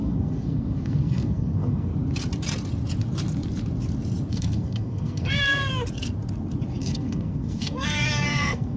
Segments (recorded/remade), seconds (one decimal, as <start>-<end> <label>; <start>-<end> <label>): 0.0-1.9 remade; 1.9-4.3 recorded; 4.3-5.7 remade; 5.7-6.8 recorded; 6.8-8.8 remade